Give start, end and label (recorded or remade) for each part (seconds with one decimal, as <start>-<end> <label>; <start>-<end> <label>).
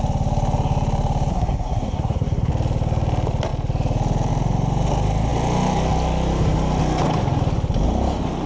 0.0-1.3 recorded; 1.3-2.5 remade; 2.5-8.5 recorded